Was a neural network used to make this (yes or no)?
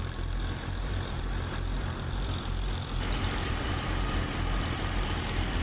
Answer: yes